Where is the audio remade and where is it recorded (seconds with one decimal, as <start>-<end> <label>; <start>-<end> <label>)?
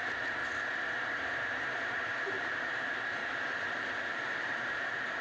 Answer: 0.0-0.4 remade; 0.4-2.4 recorded; 2.4-5.2 remade